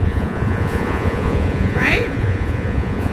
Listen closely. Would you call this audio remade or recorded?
remade